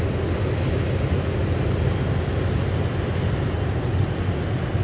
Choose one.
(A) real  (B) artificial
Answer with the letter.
A